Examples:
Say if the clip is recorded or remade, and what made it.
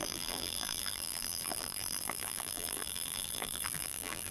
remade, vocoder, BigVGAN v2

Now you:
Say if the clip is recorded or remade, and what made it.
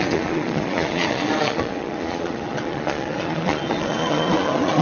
remade, vocoder, Vocos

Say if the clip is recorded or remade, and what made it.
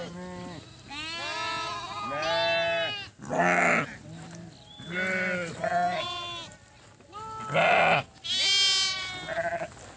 recorded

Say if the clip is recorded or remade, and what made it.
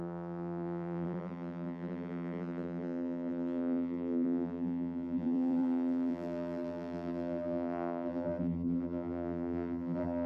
remade, vocoder, BigVGAN v2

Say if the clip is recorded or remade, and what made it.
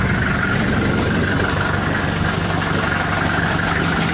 recorded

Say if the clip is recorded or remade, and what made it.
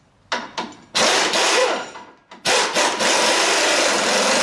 recorded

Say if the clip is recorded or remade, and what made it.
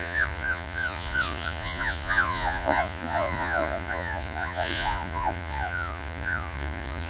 remade, vocoder, Vocos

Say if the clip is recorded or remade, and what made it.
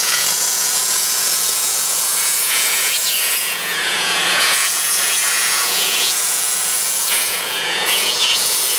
remade, vocoder, Vocos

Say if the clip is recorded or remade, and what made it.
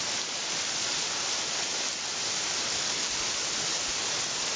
recorded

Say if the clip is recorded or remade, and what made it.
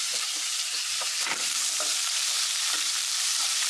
remade, vocoder, BigVGAN v2